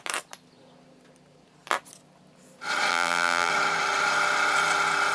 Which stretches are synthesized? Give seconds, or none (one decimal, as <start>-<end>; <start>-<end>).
2.9-3.5